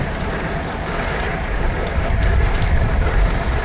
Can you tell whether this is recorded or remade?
remade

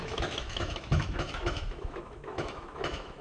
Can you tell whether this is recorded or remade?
remade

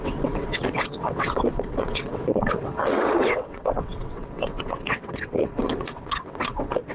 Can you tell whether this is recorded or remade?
remade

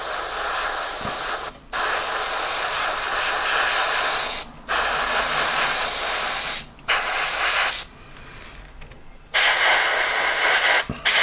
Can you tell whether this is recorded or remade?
recorded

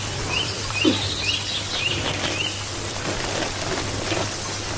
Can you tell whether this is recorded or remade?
remade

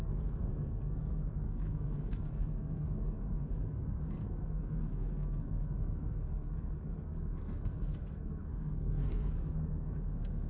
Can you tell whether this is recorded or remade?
remade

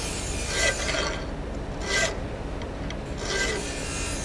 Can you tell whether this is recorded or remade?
recorded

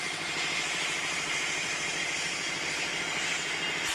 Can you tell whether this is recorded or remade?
recorded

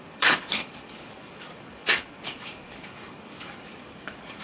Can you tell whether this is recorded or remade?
remade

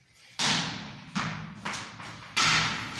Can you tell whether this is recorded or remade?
recorded